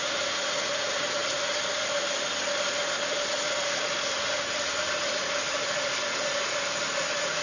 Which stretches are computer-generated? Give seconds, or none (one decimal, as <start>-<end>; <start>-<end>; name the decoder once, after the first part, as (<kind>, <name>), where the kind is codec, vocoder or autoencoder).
none